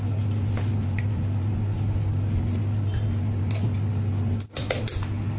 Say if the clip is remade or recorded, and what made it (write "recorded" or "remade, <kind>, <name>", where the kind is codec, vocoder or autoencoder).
recorded